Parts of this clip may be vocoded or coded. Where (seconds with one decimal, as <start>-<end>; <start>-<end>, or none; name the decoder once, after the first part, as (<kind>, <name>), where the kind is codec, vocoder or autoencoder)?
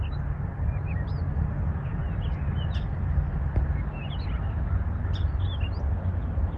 none